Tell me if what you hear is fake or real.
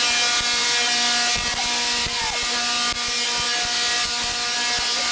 real